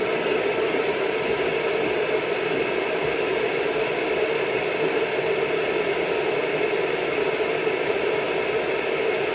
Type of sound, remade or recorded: recorded